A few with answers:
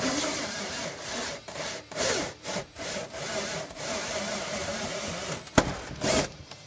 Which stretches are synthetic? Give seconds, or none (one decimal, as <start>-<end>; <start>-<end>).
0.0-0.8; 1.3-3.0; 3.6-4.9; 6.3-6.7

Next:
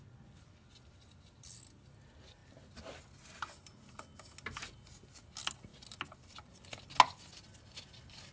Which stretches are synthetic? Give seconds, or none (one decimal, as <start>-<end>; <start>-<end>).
none

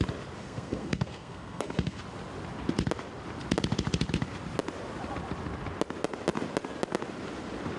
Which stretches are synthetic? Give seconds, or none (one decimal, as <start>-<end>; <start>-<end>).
0.4-2.0